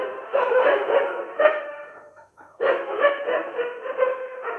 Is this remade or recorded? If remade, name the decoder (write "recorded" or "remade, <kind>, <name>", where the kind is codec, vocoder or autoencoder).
remade, autoencoder, DAC-VAE